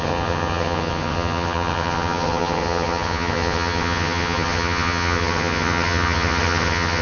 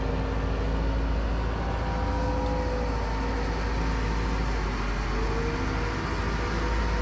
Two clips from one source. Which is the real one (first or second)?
second